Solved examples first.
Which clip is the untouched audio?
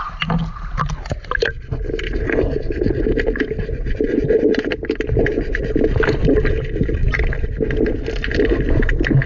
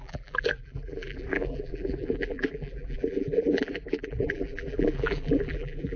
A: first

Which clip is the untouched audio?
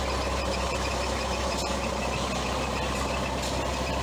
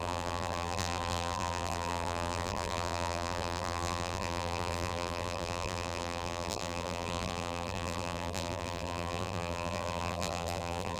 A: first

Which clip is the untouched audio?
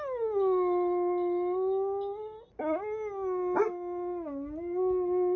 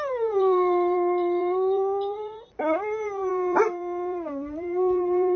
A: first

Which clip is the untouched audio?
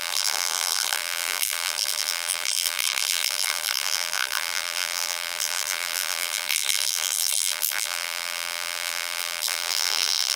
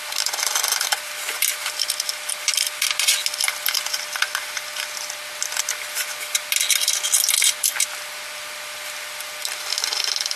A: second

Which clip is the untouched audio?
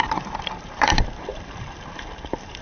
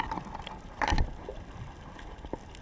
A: second